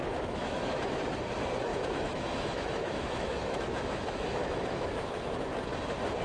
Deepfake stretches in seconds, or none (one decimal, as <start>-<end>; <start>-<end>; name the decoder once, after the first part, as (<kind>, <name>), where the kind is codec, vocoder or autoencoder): 0.0-1.0 (autoencoder, DAC-VAE); 1.7-5.4